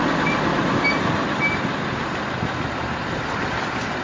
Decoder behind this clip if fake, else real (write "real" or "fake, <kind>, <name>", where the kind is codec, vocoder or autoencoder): real